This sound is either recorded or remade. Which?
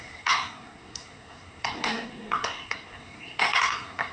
remade